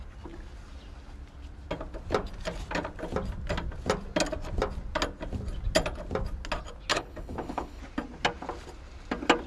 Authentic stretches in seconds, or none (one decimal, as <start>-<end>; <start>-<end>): 0.0-6.9; 7.8-9.5